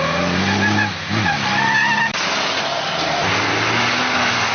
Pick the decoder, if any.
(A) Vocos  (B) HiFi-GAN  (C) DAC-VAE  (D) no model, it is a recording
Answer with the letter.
D